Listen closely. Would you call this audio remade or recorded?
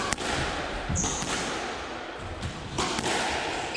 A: recorded